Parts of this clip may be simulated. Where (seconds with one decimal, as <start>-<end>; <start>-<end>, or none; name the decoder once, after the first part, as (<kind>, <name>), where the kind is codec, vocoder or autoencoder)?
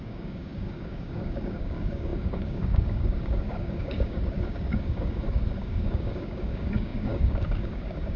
0.0-8.2 (codec, DAC)